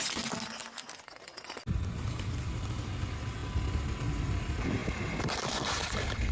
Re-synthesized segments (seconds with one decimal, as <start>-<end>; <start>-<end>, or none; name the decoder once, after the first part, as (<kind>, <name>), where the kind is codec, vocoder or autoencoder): none